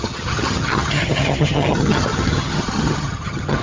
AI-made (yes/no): yes